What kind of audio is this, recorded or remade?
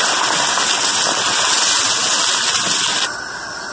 recorded